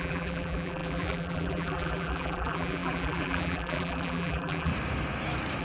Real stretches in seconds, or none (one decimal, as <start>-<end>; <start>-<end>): 4.7-5.6